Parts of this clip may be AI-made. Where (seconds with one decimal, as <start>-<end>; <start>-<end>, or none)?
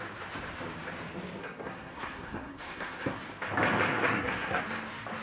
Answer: 1.4-3.2; 3.9-4.6